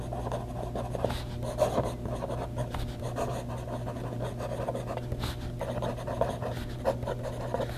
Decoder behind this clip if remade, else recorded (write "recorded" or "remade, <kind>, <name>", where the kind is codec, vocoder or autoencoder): recorded